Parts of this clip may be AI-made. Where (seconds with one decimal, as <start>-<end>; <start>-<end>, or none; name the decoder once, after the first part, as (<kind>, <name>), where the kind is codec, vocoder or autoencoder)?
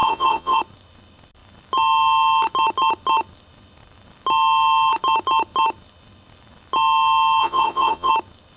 0.0-0.6 (vocoder, Vocos); 7.4-8.1